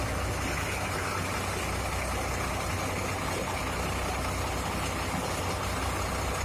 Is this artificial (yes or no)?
no